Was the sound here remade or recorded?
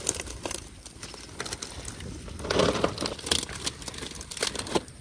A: recorded